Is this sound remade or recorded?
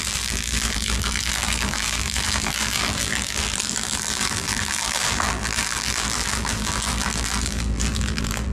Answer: remade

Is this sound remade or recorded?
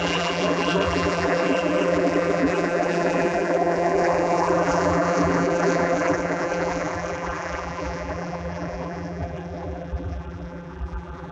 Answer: remade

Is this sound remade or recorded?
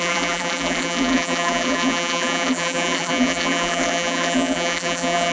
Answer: remade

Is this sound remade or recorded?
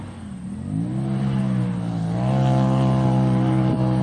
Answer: recorded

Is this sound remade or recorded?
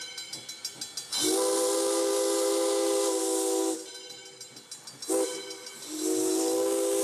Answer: recorded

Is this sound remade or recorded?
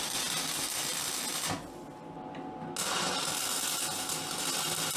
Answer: recorded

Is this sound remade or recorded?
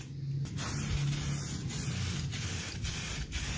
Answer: recorded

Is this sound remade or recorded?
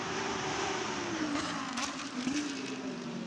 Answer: remade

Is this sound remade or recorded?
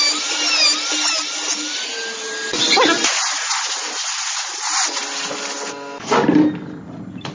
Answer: recorded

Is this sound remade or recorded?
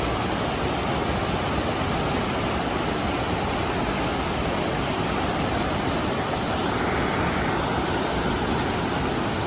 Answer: recorded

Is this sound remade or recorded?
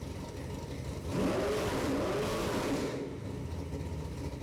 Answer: recorded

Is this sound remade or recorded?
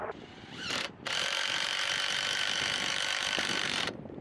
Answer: remade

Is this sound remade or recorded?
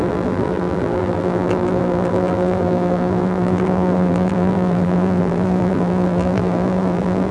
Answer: remade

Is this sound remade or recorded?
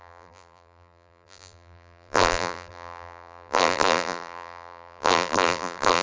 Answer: remade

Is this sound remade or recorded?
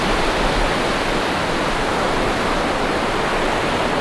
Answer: recorded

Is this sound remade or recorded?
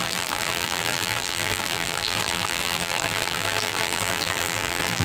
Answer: remade